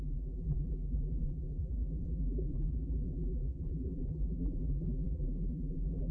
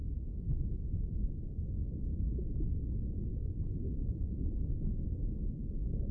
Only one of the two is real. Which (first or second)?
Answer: second